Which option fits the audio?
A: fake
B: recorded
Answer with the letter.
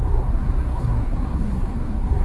A